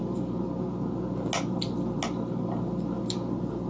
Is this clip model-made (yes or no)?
no